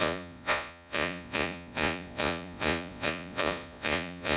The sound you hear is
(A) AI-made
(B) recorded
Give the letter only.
A